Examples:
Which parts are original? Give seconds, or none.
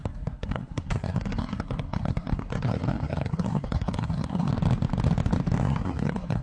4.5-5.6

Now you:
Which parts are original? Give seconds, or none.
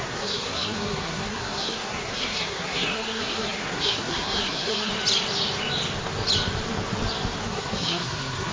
4.9-7.4